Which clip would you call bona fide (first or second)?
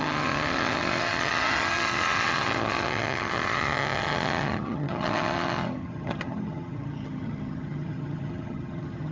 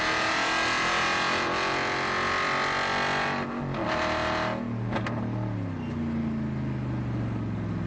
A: second